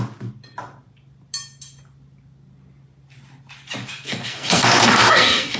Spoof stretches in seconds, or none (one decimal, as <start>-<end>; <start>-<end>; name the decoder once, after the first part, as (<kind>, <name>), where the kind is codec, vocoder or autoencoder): 3.8-5.6 (codec, SNAC)